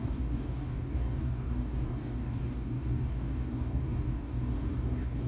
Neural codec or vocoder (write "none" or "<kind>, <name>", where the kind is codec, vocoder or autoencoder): codec, DAC